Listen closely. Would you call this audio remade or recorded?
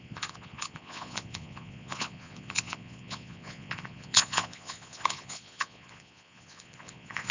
remade